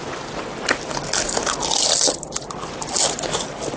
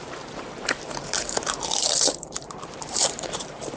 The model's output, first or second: second